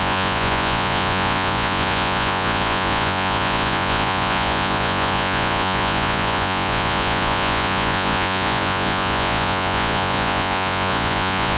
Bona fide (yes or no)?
no